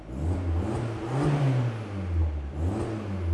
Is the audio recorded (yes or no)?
yes